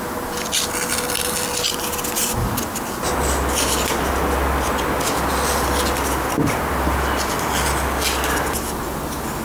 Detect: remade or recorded recorded